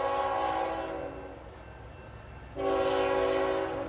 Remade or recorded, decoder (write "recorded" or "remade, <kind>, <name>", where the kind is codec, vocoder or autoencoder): recorded